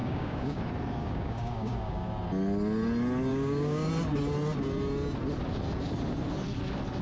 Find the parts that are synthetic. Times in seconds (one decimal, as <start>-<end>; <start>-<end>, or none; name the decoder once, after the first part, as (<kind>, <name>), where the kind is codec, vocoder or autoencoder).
0.0-0.6 (codec, DAC); 1.0-2.1; 3.3-3.9